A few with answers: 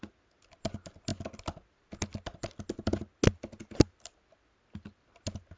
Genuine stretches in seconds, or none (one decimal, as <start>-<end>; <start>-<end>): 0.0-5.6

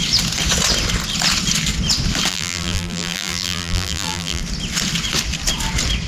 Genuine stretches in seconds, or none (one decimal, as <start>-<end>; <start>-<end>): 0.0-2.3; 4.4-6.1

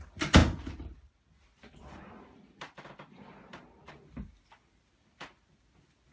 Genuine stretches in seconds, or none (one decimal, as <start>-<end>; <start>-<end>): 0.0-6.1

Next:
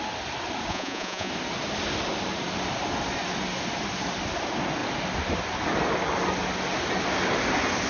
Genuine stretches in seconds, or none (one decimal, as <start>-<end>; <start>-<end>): 0.0-0.7; 1.3-7.9